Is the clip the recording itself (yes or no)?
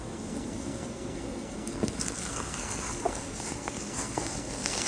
no